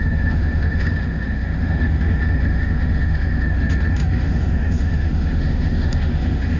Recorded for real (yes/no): no